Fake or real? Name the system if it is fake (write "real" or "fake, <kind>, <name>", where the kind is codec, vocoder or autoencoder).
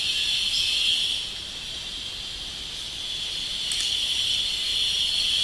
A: real